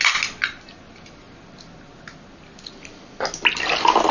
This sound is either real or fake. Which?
real